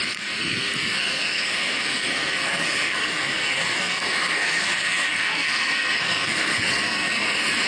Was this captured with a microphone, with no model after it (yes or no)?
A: no